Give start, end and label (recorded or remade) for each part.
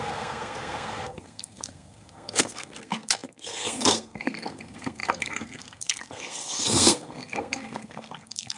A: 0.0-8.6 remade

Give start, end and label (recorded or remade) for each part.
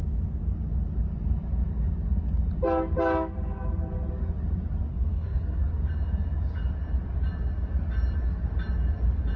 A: 0.0-4.9 recorded; 4.9-5.6 remade; 5.6-9.4 recorded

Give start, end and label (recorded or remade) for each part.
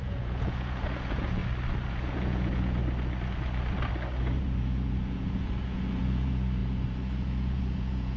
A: 0.0-1.4 remade; 1.4-1.9 recorded; 1.9-2.8 remade; 2.8-4.2 recorded; 4.2-8.2 remade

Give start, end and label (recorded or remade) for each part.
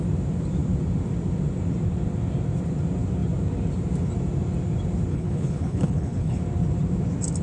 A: 0.0-5.1 recorded; 5.1-6.4 remade; 6.4-7.4 recorded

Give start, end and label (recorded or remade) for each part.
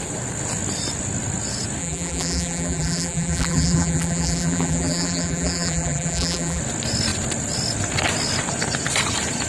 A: 0.0-1.8 recorded; 1.8-6.6 remade; 6.6-9.5 recorded